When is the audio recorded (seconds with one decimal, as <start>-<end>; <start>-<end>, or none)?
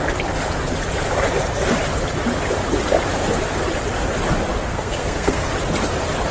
0.0-4.6; 5.5-6.3